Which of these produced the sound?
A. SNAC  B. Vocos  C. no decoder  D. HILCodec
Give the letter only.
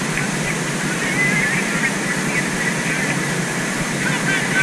C